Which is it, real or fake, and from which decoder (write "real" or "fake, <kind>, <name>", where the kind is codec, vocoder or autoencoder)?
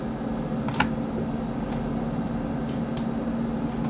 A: real